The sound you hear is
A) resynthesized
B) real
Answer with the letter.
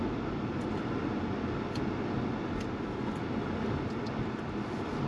B